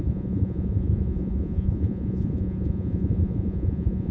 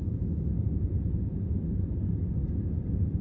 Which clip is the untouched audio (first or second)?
second